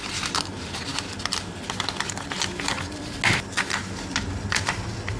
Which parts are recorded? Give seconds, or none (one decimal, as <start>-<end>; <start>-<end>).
0.0-5.2